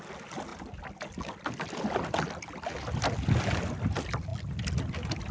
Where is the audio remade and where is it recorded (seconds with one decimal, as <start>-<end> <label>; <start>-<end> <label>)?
0.0-5.3 recorded